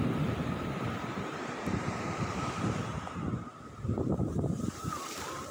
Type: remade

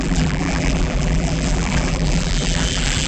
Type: remade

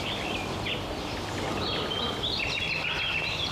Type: recorded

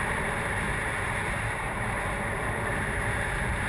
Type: remade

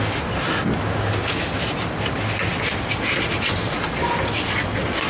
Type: recorded